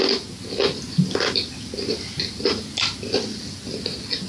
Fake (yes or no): no